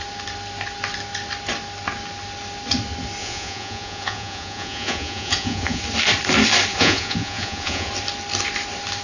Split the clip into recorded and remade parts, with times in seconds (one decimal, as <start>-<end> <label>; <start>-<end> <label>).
0.0-3.2 recorded; 3.2-5.8 remade; 5.8-6.7 recorded; 6.7-7.9 remade; 7.9-9.0 recorded